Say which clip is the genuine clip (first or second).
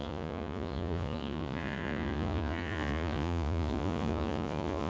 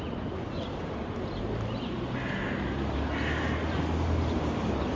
second